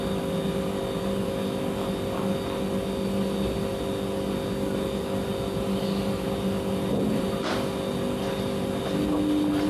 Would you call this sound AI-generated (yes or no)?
no